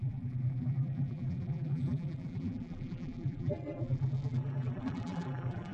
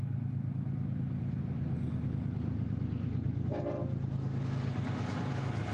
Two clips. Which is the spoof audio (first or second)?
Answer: first